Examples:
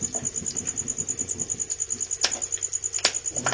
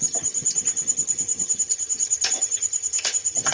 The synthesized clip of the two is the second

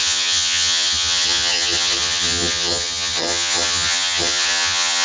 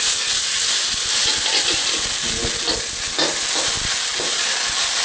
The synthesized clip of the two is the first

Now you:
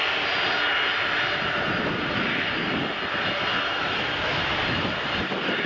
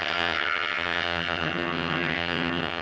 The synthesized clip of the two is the second